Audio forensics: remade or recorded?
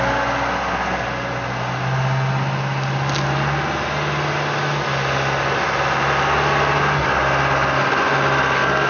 recorded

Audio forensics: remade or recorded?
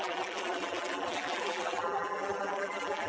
remade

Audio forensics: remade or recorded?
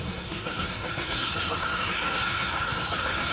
remade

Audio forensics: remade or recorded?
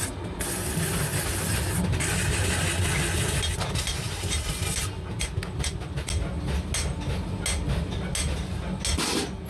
recorded